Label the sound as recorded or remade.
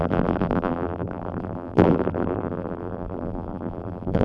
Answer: remade